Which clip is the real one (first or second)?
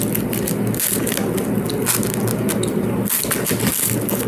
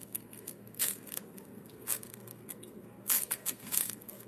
first